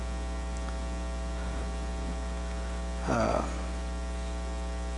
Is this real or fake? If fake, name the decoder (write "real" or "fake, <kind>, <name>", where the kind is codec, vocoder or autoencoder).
real